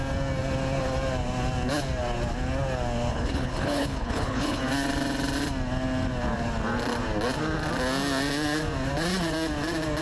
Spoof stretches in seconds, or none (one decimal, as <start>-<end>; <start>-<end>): 3.1-4.6